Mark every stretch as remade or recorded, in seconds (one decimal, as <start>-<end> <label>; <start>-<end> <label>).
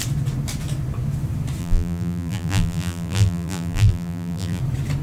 0.0-1.6 recorded; 1.6-4.6 remade; 4.6-5.0 recorded